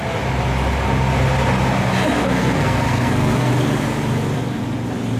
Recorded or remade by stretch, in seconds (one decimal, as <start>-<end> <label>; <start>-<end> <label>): 0.0-2.2 recorded; 2.2-3.5 remade; 3.5-5.2 recorded